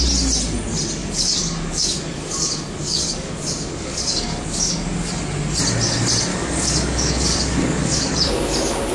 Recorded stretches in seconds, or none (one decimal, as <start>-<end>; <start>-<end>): 0.0-1.0; 5.1-6.3

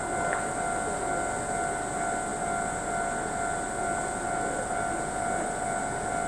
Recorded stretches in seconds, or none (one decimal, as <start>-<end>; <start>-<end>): 0.0-6.3

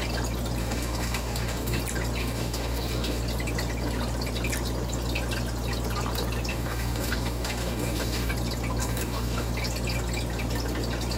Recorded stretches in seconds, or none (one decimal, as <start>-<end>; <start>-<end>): 0.0-0.6; 1.8-2.2; 3.2-6.5; 8.3-8.8; 9.5-11.2

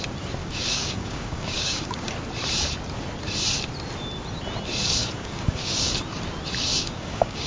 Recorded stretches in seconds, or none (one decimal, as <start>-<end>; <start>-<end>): 0.0-0.4; 2.1-5.0; 5.9-6.7

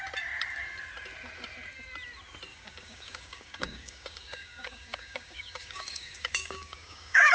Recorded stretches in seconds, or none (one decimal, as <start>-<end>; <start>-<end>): 0.0-2.5